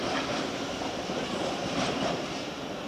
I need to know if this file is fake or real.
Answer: fake